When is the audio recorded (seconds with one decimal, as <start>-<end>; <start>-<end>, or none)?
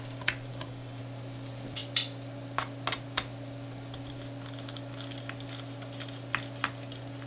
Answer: 0.0-0.5; 1.0-7.3